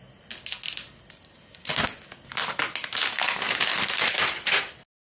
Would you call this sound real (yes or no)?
yes